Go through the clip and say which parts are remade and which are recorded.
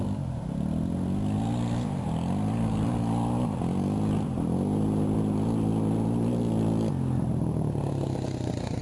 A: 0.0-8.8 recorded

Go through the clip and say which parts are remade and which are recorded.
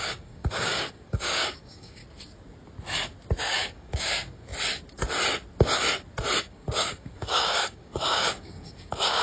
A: 0.0-2.0 remade; 2.0-3.4 recorded; 3.4-4.5 remade; 4.5-6.4 recorded; 6.4-9.2 remade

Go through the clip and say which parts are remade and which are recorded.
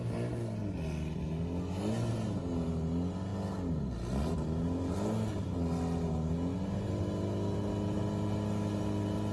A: 0.0-9.3 recorded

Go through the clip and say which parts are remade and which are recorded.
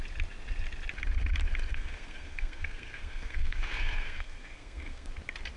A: 0.0-1.7 recorded; 1.7-5.1 remade; 5.1-5.6 recorded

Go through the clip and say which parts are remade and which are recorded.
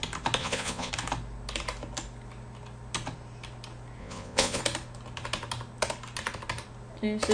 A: 0.0-0.4 recorded; 0.4-0.9 remade; 0.9-4.0 recorded; 4.0-4.6 remade; 4.6-7.3 recorded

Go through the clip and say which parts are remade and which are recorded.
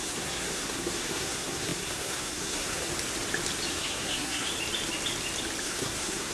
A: 0.0-2.9 remade; 2.9-3.7 recorded; 3.7-4.5 remade; 4.5-5.6 recorded; 5.6-6.3 remade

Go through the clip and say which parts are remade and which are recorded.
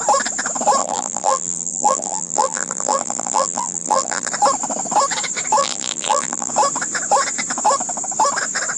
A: 0.0-0.8 recorded; 0.8-4.3 remade; 4.3-5.6 recorded; 5.6-6.5 remade; 6.5-8.8 recorded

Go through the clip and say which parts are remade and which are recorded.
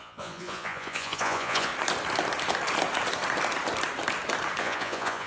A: 0.0-1.7 remade; 1.7-4.6 recorded; 4.6-5.3 remade